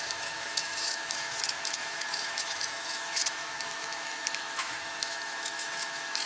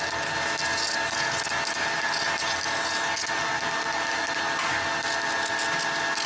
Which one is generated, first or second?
first